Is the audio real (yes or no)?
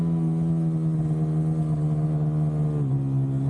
yes